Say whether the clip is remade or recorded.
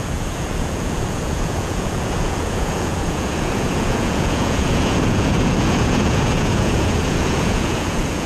remade